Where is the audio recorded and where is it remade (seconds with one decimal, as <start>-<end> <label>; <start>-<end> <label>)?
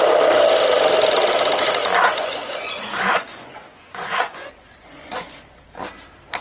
0.0-1.8 recorded; 1.8-5.6 remade; 5.6-6.4 recorded